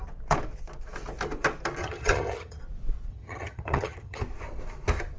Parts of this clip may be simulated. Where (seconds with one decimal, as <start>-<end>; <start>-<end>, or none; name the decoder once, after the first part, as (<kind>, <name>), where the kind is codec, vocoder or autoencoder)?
1.8-2.6 (vocoder, HiFi-GAN); 3.1-4.2